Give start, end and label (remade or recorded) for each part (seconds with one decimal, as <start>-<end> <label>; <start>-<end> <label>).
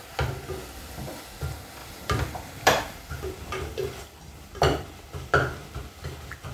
0.0-1.8 recorded; 1.8-5.3 remade; 5.3-6.5 recorded